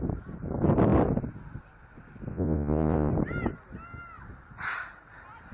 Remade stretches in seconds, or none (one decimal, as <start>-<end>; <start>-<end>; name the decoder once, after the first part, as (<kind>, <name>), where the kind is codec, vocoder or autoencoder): 2.3-3.1 (vocoder, Vocos)